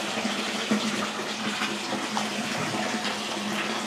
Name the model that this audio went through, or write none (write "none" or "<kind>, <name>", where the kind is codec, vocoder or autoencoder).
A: none